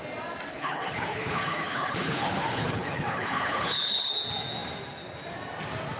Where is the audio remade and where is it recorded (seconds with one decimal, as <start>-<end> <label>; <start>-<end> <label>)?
0.0-0.5 recorded; 0.5-4.1 remade; 4.1-6.0 recorded